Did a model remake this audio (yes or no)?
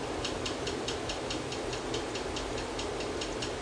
yes